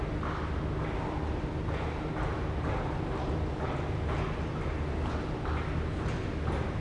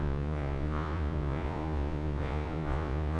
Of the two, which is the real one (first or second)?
first